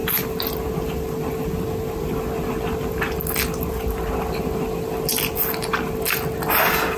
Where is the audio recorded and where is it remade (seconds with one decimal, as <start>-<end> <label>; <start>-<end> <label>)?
0.0-7.0 recorded